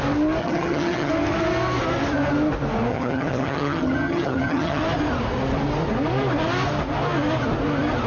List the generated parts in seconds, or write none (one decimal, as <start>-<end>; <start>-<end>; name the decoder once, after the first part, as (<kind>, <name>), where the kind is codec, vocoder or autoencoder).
0.4-1.1 (vocoder, HiFi-GAN); 2.9-4.8